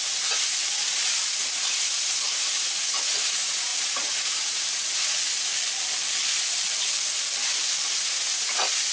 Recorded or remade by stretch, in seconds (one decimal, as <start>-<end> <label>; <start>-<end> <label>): 0.0-1.0 remade; 1.0-1.5 recorded; 1.5-5.5 remade; 5.5-8.0 recorded; 8.0-8.9 remade